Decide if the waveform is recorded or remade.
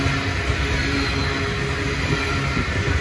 recorded